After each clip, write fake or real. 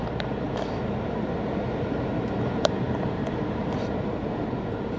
fake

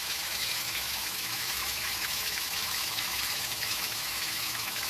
fake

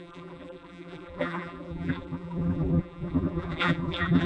fake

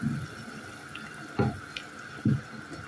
real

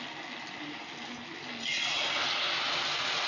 real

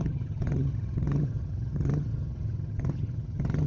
fake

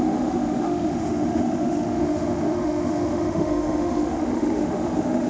fake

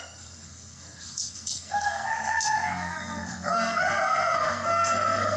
fake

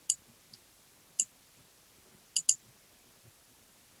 real